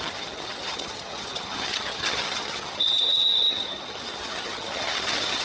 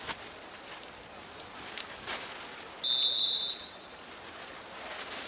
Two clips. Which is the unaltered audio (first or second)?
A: second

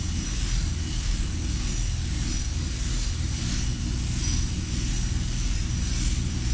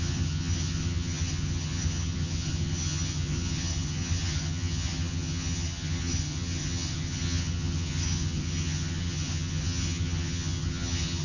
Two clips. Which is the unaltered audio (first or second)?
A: first